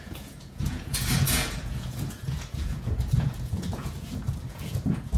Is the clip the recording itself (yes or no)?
no